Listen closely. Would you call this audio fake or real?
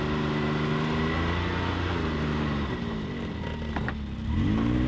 real